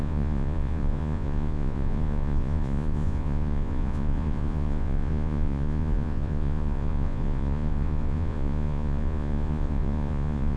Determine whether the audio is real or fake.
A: fake